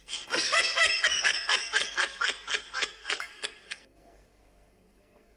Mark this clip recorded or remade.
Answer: remade